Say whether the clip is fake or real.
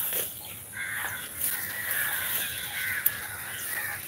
real